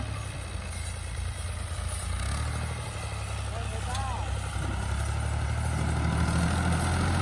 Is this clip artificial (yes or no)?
no